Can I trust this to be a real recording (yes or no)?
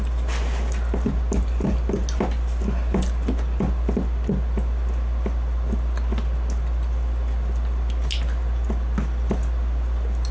yes